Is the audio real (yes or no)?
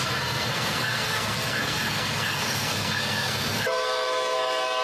no